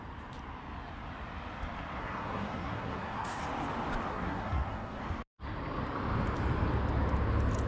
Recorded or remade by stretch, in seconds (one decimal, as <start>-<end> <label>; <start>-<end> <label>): 0.0-2.0 recorded; 2.0-3.4 remade; 3.4-4.1 recorded; 4.1-5.0 remade; 5.0-7.7 recorded